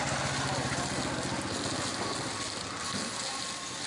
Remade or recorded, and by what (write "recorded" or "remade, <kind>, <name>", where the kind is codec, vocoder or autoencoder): recorded